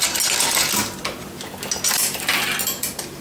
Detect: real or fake real